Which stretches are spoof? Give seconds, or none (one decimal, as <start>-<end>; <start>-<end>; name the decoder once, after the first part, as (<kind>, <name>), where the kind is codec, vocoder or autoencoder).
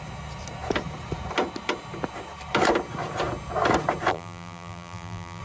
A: 4.1-5.4 (vocoder, BigVGAN v2)